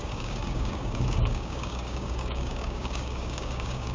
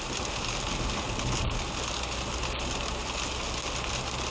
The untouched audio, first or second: second